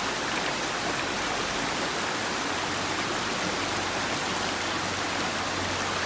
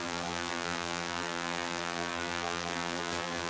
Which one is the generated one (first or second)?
second